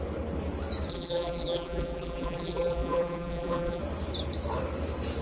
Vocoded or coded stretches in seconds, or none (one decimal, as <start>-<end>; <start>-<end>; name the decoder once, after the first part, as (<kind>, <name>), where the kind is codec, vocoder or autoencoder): 0.9-3.8 (vocoder, BigVGAN v2)